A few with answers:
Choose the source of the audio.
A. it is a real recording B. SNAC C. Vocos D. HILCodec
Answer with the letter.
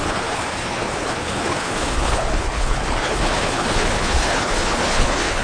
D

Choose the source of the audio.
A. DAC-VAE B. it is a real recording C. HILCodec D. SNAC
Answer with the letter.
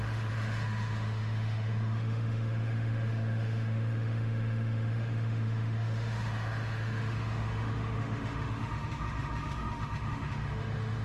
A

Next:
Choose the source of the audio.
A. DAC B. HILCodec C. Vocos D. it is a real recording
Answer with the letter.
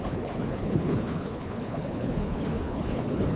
B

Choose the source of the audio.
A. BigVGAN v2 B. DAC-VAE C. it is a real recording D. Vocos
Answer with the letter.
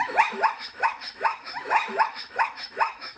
B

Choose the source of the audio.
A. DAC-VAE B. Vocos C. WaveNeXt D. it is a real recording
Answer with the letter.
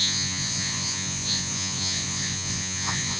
B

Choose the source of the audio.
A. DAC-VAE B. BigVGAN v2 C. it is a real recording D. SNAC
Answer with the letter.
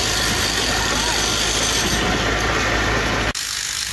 C